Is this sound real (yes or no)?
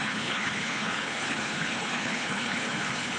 no